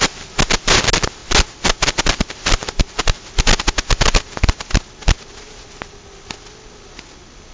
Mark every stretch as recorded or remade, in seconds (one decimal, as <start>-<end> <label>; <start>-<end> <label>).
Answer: 0.0-7.5 recorded